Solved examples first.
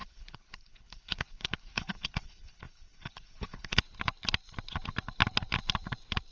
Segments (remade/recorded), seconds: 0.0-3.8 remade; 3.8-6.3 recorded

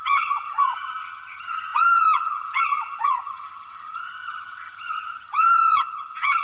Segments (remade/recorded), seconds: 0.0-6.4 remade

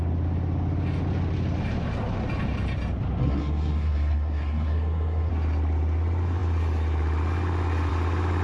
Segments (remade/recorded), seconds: 0.0-3.2 recorded; 3.2-5.3 remade; 5.3-8.4 recorded

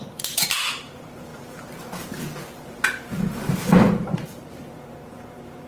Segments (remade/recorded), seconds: 0.0-5.7 remade